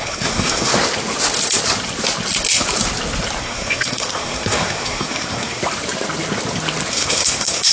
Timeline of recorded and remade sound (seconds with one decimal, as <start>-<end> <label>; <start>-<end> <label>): 0.0-0.7 remade; 0.7-3.4 recorded; 3.4-5.6 remade; 5.6-6.9 recorded; 6.9-7.7 remade